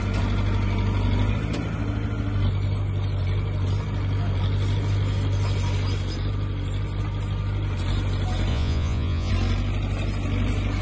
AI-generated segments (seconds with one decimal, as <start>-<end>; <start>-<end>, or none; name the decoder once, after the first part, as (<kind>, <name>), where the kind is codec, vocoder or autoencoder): 8.5-9.3 (vocoder, Vocos)